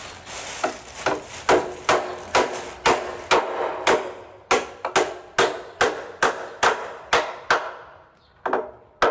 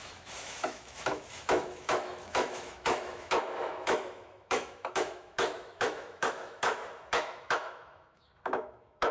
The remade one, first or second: second